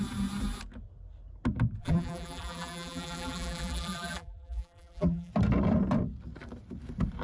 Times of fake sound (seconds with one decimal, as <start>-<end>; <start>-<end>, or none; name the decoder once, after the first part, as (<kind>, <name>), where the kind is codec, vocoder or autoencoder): 1.8-5.3 (vocoder, BigVGAN v2)